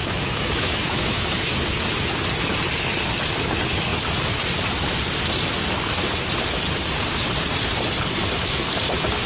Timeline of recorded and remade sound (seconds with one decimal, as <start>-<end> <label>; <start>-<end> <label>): 0.0-1.6 remade; 1.6-9.3 recorded